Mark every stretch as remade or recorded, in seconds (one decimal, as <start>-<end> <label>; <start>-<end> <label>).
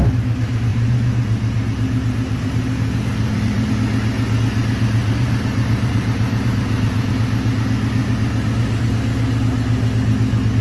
0.0-0.7 recorded; 0.7-3.7 remade; 3.7-5.0 recorded; 5.0-7.1 remade; 7.1-8.0 recorded; 8.0-8.9 remade; 8.9-10.6 recorded